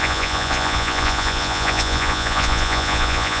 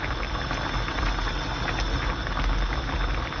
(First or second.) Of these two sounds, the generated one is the first